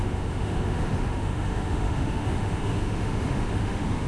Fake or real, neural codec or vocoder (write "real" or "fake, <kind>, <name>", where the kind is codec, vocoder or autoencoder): fake, autoencoder, DAC-VAE